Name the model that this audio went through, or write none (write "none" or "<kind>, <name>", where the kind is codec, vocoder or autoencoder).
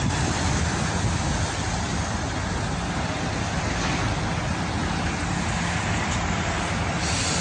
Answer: none